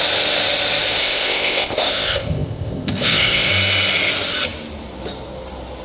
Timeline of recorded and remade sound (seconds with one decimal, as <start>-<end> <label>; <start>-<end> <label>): 0.0-1.0 recorded; 1.0-3.5 remade; 3.5-5.8 recorded